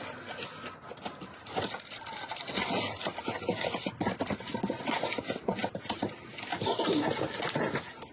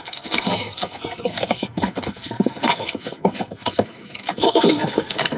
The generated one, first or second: second